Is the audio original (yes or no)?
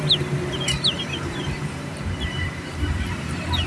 no